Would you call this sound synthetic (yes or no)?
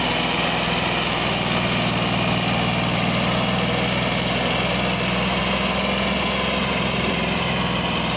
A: no